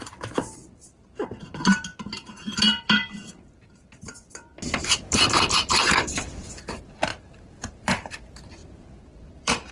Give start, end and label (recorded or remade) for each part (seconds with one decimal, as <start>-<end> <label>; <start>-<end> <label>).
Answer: 0.0-1.9 remade; 1.9-2.8 recorded; 2.8-9.7 remade